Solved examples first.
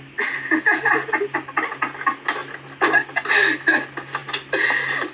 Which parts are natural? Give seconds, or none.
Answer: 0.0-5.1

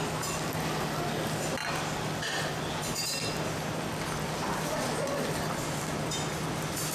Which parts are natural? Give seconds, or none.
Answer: 0.0-6.9